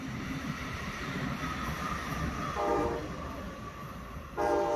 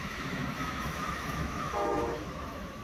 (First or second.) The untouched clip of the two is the first